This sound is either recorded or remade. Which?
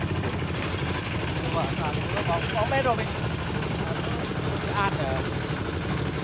recorded